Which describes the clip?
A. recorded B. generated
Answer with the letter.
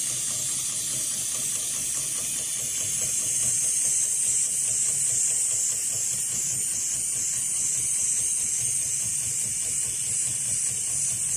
A